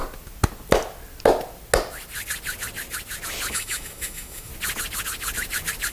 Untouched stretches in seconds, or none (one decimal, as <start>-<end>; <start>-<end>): 0.0-3.5; 4.5-5.9